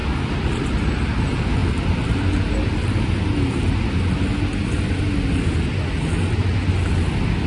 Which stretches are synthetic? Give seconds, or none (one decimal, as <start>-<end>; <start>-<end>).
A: none